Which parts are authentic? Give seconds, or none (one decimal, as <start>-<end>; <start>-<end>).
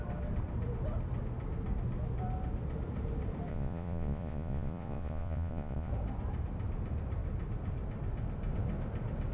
0.0-3.5; 5.9-9.3